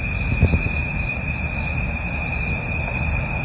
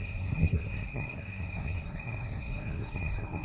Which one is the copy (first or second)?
second